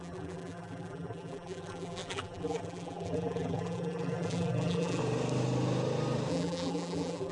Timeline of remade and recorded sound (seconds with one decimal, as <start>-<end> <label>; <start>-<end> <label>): 0.0-5.0 remade; 5.0-6.3 recorded; 6.3-7.3 remade